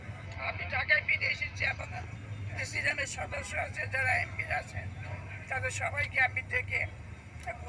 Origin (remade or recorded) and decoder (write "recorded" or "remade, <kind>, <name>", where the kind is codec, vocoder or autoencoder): recorded